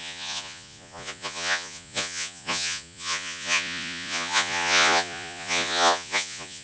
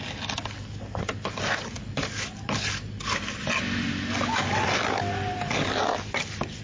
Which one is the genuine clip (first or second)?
second